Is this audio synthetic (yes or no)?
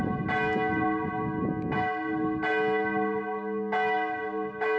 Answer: no